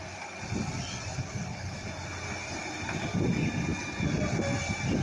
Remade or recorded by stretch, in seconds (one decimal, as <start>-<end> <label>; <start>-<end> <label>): 0.0-1.1 recorded; 1.1-1.9 remade; 1.9-5.0 recorded